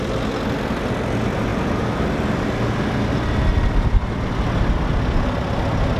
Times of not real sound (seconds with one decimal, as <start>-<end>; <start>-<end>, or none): none